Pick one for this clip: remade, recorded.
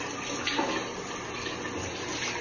recorded